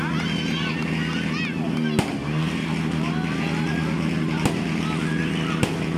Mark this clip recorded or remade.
recorded